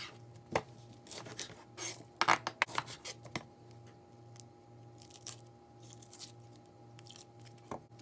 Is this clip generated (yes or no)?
no